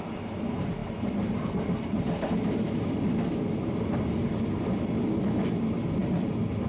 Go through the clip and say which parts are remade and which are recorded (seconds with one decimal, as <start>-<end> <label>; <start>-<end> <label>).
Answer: 0.0-6.7 recorded